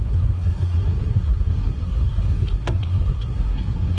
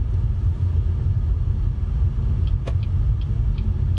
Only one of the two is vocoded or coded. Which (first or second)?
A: first